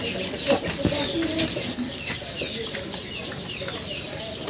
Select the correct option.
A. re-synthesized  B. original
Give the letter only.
B